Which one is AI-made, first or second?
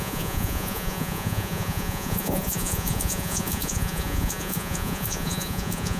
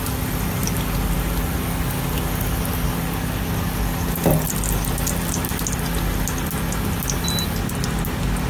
first